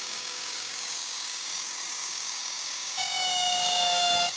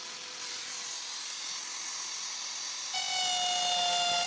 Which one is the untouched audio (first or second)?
second